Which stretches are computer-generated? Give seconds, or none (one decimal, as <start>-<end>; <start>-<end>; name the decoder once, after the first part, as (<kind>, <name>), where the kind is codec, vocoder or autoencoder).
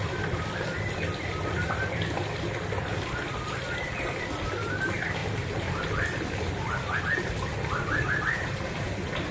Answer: none